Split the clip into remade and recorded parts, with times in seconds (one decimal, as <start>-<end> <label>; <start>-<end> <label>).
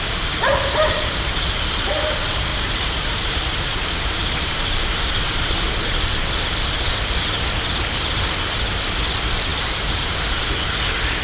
0.0-2.5 recorded; 2.5-5.6 remade; 5.6-6.5 recorded; 6.5-7.0 remade; 7.0-9.5 recorded; 9.5-10.4 remade; 10.4-11.2 recorded